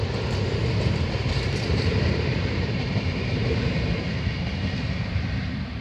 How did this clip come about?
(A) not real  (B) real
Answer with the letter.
A